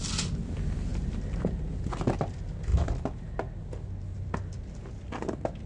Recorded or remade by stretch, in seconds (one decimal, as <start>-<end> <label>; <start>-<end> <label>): 0.0-5.7 recorded